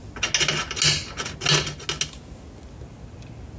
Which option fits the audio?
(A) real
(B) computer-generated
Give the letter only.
A